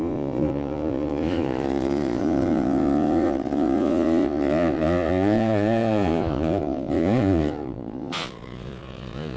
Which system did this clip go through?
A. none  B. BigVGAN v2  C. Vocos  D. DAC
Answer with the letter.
C